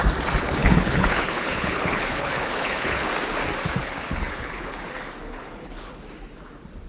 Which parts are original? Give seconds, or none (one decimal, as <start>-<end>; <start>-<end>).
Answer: 0.0-0.6; 3.1-3.8; 4.8-5.2; 6.0-6.9